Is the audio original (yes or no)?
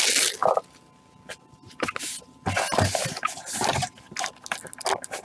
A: yes